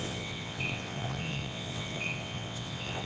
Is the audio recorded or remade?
remade